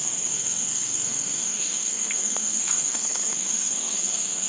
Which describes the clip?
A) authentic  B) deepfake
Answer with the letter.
B